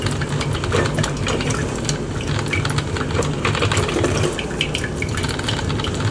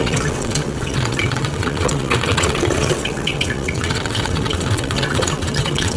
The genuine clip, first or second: first